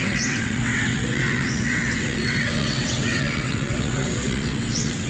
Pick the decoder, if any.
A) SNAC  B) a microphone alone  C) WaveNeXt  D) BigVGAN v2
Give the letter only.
C